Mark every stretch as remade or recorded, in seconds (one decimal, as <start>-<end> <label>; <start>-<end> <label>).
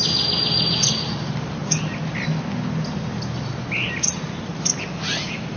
0.0-5.6 recorded